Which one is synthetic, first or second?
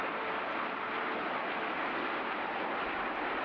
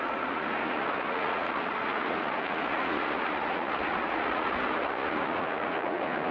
second